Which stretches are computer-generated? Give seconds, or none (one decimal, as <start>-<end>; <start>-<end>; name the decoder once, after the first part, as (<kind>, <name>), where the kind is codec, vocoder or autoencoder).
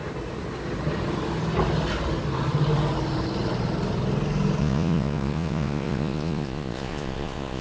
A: 4.6-7.6 (vocoder, Vocos)